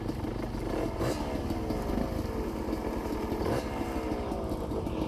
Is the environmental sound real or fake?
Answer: real